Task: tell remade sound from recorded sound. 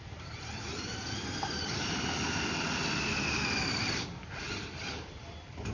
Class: remade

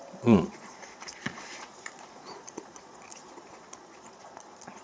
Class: remade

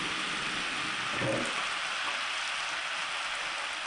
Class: recorded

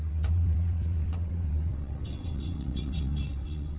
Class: remade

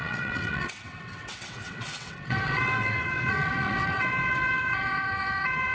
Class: remade